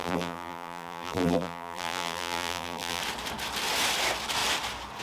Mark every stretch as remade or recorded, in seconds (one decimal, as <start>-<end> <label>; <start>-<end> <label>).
0.0-3.0 remade; 3.0-5.0 recorded